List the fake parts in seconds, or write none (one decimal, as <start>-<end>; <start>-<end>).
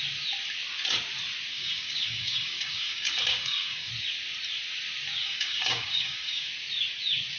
1.5-3.9; 5.2-6.5